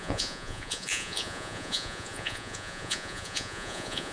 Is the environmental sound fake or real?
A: fake